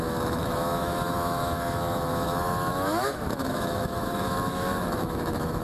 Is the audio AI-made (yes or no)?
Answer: yes